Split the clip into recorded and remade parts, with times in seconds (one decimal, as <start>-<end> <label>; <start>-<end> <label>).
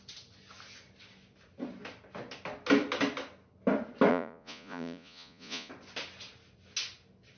0.0-4.1 recorded; 4.1-5.7 remade; 5.7-7.4 recorded